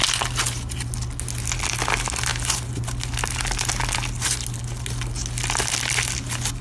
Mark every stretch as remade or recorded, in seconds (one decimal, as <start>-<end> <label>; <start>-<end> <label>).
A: 0.0-6.6 recorded